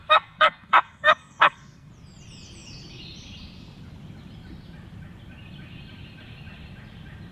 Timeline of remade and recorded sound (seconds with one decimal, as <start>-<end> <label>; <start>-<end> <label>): 0.0-1.9 remade; 1.9-7.3 recorded